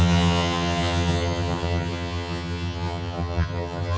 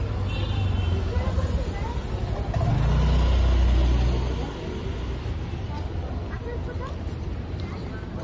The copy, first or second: first